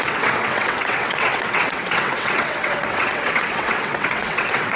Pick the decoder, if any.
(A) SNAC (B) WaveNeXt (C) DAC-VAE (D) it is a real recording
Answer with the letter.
B